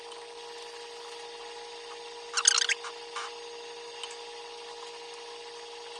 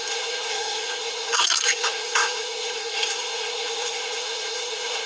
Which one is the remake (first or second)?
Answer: second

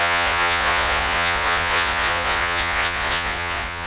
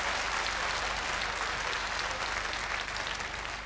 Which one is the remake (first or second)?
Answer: first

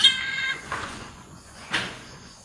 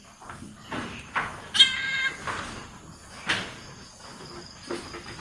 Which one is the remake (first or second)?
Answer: first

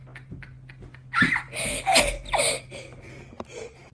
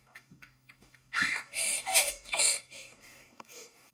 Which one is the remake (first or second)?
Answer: second